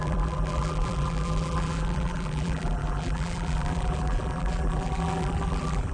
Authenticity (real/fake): fake